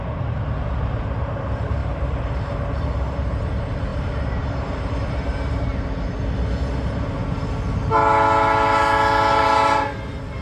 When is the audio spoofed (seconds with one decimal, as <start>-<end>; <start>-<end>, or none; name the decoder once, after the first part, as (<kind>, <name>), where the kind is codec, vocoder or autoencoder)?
0.0-5.7 (vocoder, BigVGAN v2); 6.7-7.2; 9.3-10.4